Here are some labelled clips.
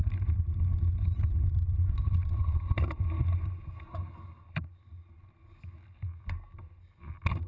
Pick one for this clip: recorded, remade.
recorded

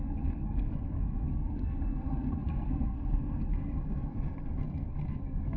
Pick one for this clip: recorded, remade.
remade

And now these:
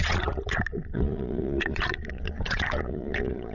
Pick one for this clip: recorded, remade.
remade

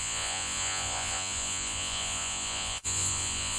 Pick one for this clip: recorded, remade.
remade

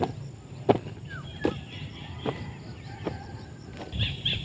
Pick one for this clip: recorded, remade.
recorded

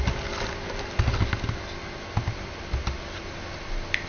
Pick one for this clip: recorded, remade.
recorded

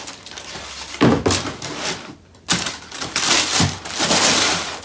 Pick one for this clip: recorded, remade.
recorded